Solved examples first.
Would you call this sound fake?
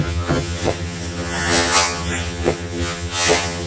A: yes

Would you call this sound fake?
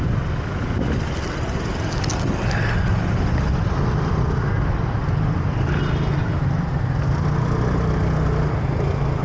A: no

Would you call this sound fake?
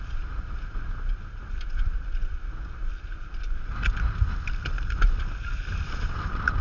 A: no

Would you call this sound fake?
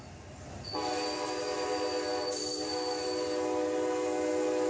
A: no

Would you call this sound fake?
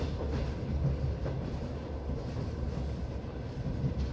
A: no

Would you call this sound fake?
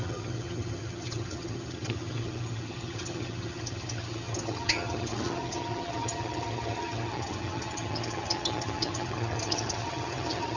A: yes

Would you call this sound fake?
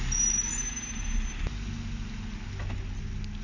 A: no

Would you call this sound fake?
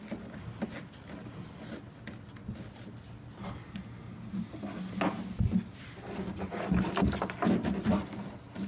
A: no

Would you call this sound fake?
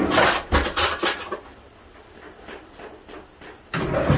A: no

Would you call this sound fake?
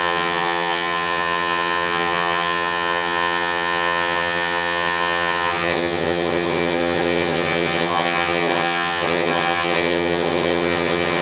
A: yes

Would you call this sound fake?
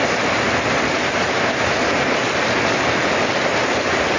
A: no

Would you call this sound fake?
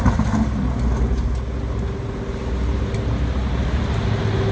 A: no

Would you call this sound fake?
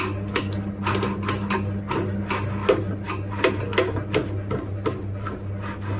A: no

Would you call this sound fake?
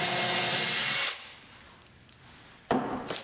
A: no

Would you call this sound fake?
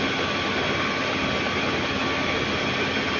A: no